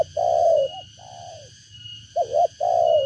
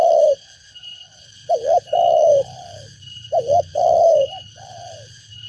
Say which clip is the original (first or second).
first